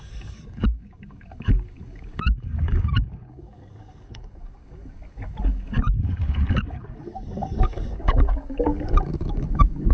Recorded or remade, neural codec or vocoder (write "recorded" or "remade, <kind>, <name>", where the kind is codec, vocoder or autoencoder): remade, codec, DAC